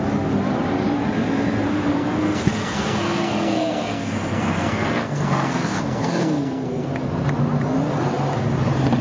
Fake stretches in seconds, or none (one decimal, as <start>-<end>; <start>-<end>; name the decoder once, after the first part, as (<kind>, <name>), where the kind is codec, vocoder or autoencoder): 1.9-6.9 (codec, SNAC)